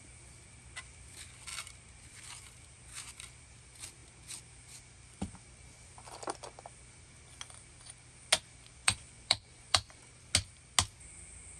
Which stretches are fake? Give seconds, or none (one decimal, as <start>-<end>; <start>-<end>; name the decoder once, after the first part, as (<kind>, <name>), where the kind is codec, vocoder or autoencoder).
8.8-10.2 (vocoder, Vocos)